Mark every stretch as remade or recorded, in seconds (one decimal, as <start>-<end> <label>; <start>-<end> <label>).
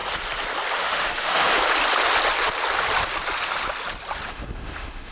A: 0.0-0.8 recorded; 0.8-1.5 remade; 1.5-4.3 recorded; 4.3-5.1 remade